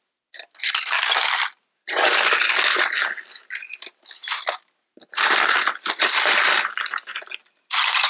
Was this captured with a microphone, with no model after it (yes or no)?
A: yes